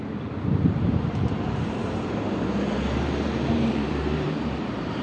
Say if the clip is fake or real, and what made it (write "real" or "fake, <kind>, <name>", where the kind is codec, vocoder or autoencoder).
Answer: fake, vocoder, BigVGAN v2